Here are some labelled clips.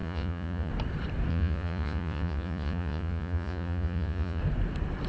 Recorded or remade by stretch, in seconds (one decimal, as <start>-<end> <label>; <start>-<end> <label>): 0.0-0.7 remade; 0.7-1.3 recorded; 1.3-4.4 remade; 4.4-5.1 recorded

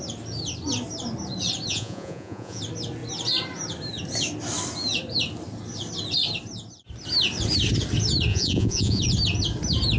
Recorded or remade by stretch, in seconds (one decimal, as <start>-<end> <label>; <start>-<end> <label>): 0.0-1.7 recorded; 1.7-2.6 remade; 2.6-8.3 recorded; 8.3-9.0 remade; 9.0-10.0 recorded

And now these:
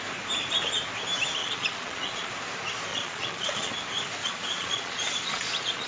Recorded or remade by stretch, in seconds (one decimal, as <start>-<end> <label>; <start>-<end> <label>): 0.0-1.4 recorded; 1.4-2.3 remade; 2.3-2.9 recorded; 2.9-3.7 remade; 3.7-4.2 recorded; 4.2-5.9 remade

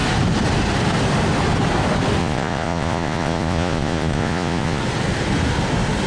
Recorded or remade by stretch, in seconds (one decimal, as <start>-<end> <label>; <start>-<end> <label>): 0.0-2.2 recorded; 2.2-4.8 remade; 4.8-6.1 recorded

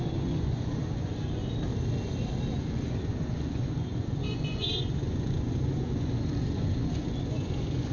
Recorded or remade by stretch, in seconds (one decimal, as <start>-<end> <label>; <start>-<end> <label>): 0.0-1.4 remade; 1.4-2.5 recorded; 2.5-7.9 remade

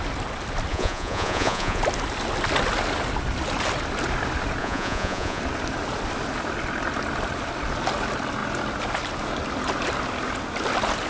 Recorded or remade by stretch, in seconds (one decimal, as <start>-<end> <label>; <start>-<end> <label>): 0.0-0.7 recorded; 0.7-1.8 remade; 1.8-4.6 recorded; 4.6-5.4 remade; 5.4-11.1 recorded